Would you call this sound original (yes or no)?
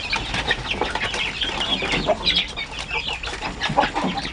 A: yes